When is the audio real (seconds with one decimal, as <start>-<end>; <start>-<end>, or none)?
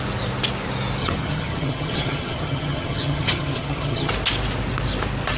0.0-1.0; 4.1-5.4